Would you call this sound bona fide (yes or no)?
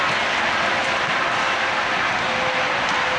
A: yes